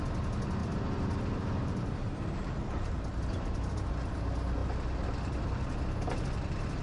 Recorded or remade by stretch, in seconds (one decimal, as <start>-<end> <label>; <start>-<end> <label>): 0.0-0.6 recorded; 0.6-3.7 remade; 3.7-6.8 recorded